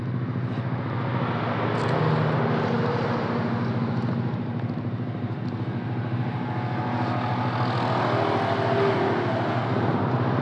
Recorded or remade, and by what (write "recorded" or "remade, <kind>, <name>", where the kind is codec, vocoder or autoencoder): recorded